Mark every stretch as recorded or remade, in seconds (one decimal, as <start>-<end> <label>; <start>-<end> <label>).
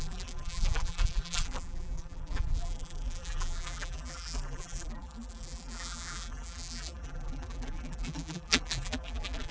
0.0-9.5 remade